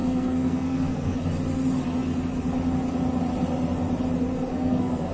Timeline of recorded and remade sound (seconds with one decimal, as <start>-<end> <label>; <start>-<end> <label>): 0.0-1.3 remade; 1.3-4.5 recorded; 4.5-5.1 remade